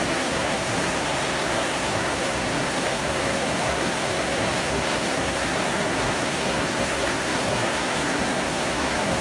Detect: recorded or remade remade